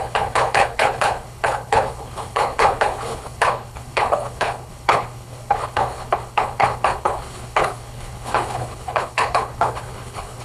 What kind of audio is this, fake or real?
fake